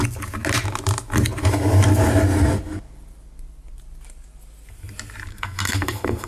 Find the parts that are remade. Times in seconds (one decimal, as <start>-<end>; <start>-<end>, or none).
5.3-6.3